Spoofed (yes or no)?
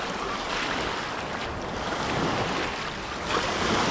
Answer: no